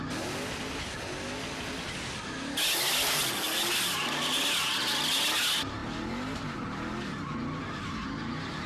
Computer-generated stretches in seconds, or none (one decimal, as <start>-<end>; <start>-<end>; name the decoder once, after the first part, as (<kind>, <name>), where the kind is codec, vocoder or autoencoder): none